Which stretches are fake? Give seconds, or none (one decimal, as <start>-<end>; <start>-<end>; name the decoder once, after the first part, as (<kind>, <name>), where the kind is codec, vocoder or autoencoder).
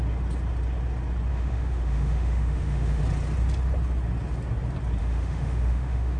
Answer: 1.3-3.0 (autoencoder, DAC-VAE); 5.0-6.2